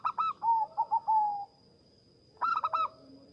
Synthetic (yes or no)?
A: no